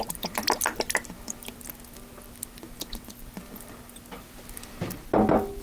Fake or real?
real